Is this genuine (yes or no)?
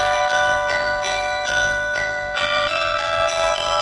no